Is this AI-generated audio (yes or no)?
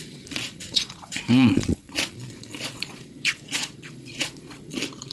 yes